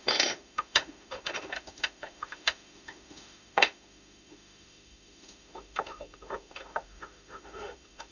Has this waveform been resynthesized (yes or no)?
yes